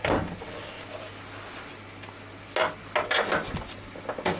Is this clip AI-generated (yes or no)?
no